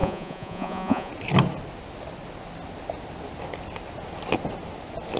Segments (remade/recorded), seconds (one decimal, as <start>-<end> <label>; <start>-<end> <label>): 0.0-1.1 remade; 1.1-5.2 recorded